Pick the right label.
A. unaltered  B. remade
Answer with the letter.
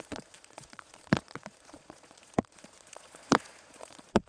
B